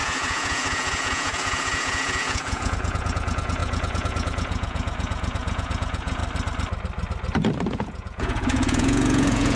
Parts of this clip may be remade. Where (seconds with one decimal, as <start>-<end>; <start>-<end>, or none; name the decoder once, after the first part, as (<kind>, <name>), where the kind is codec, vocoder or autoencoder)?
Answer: 0.0-6.2 (vocoder, Vocos); 7.7-9.6